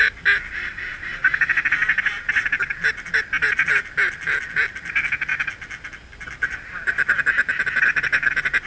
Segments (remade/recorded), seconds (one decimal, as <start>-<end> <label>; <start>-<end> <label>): 0.0-8.7 recorded